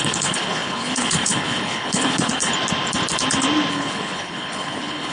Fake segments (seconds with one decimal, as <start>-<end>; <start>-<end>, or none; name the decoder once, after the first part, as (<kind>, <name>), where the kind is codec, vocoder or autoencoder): 0.0-2.5 (codec, HILCodec); 3.7-5.1